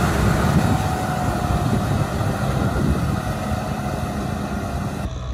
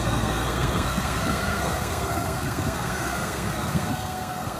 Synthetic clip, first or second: second